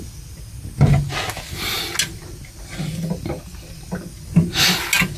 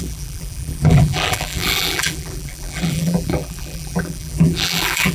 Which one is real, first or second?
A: first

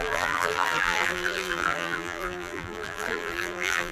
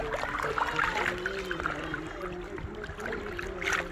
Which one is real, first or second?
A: second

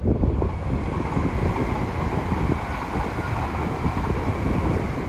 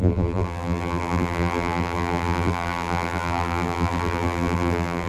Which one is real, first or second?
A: first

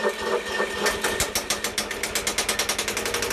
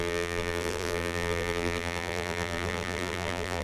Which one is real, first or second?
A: first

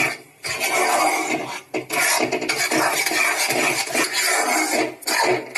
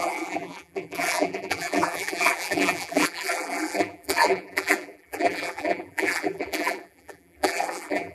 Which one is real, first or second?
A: first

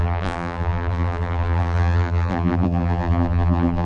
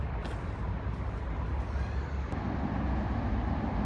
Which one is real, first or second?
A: second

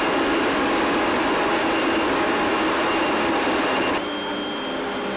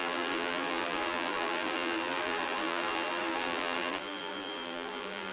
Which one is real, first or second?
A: first